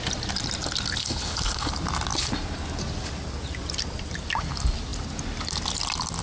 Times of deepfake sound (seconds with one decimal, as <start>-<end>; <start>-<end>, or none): 1.0-1.7